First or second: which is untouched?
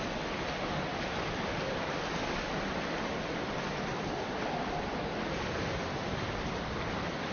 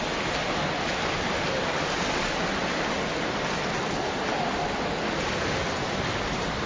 second